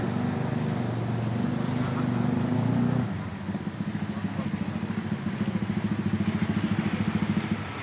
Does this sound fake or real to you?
real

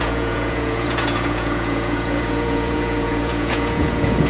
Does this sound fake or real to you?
fake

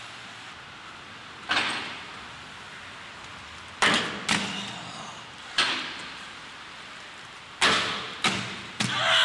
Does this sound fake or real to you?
real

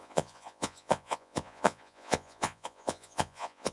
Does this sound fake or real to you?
fake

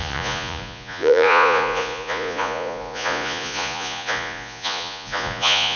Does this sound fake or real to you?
fake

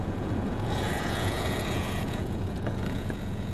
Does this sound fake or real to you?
fake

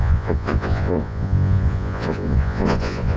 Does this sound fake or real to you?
fake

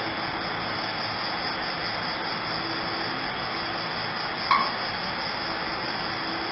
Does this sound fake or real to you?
real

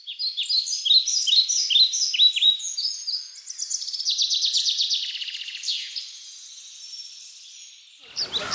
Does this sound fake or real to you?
real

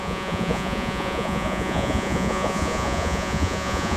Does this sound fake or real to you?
fake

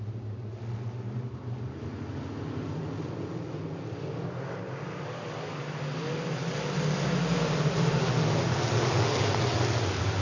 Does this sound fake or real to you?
real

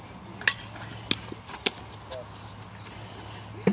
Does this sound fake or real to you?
real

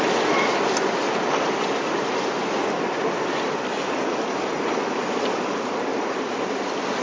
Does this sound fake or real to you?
real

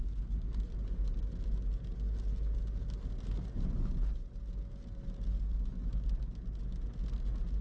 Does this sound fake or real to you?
real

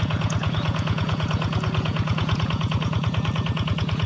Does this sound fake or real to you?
fake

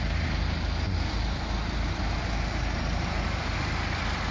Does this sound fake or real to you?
real